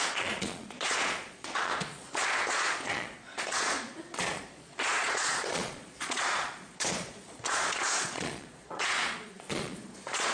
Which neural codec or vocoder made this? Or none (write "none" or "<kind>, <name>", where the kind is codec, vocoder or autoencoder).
vocoder, Vocos